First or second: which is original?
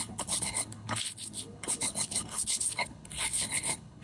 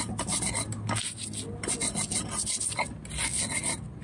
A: second